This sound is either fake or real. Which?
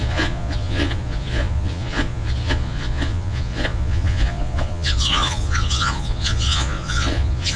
fake